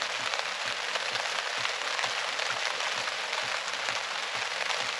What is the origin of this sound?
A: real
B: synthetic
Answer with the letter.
A